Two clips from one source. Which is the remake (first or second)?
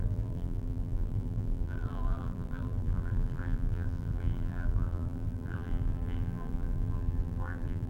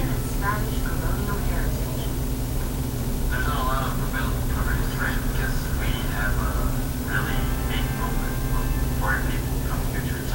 first